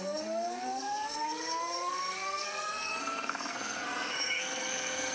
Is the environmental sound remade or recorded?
remade